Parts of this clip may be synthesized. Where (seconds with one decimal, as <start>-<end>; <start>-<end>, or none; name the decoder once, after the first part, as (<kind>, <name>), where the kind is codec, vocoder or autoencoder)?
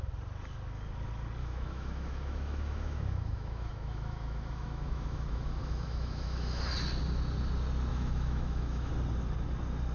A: 1.4-6.6 (autoencoder, DAC-VAE); 7.9-8.9